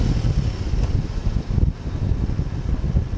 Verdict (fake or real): real